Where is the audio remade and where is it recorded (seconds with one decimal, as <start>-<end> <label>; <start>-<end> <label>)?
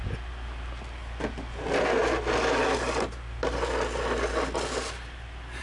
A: 0.0-5.6 recorded